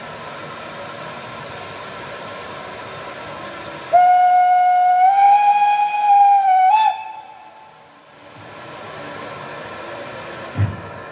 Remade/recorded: recorded